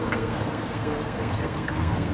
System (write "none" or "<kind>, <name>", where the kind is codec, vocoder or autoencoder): codec, SNAC